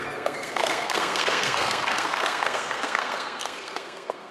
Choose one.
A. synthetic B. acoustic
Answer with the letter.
A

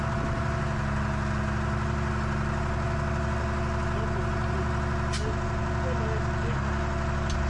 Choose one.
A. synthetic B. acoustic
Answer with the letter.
B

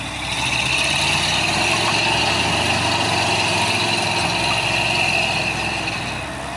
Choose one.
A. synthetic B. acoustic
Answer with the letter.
B